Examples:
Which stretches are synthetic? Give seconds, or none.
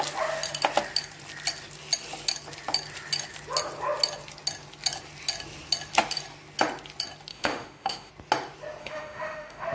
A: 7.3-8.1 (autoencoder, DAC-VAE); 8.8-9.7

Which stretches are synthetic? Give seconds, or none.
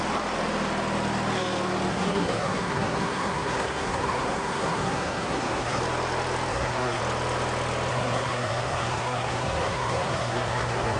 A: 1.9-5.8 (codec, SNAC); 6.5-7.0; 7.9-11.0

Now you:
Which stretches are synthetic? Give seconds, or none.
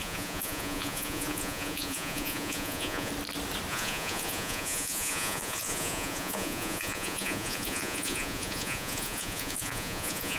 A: 0.0-3.1 (vocoder, Vocos); 3.7-10.4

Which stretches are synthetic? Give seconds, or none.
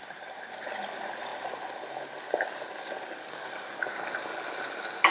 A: none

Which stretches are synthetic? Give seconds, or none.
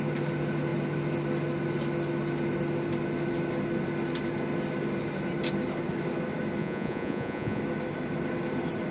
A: 6.6-7.6 (vocoder, Vocos)